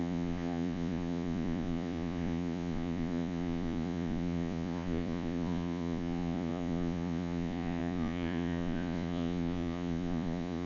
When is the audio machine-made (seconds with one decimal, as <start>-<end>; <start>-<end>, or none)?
0.0-10.7